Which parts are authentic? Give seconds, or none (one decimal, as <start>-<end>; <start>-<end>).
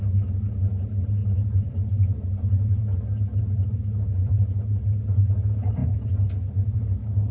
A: 0.0-1.2; 2.8-3.3; 4.6-5.8